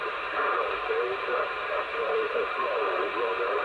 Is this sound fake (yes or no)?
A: yes